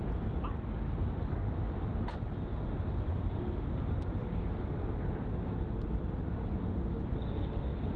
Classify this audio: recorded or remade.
recorded